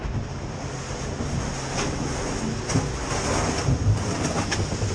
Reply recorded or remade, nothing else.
recorded